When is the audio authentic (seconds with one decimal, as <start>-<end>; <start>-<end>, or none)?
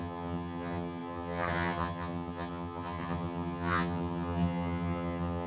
none